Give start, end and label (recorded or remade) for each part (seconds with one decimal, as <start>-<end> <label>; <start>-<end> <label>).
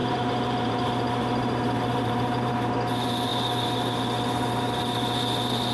0.0-2.5 remade; 2.5-5.7 recorded